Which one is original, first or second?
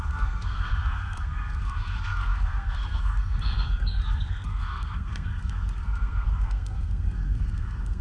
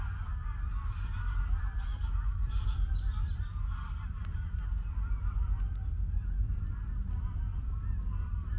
second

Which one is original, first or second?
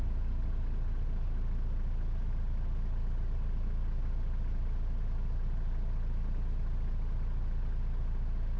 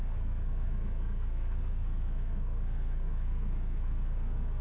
first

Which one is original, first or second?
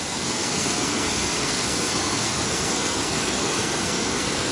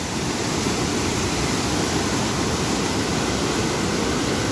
second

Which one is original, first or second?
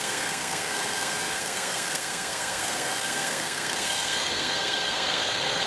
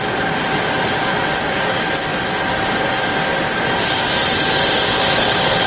second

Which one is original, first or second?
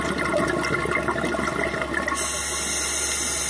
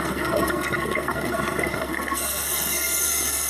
first